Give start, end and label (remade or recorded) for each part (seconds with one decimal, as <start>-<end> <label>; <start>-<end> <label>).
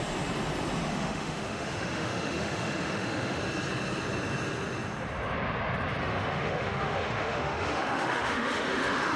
0.0-0.9 recorded; 0.9-3.4 remade; 3.4-6.0 recorded; 6.0-9.2 remade